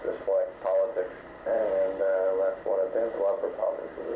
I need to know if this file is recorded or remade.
recorded